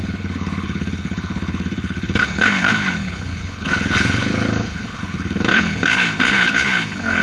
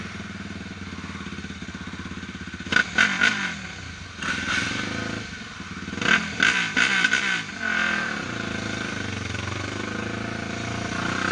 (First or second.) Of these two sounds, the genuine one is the second